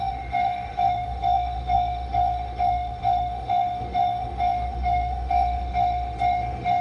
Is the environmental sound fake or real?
fake